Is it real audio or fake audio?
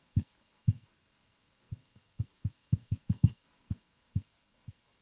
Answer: fake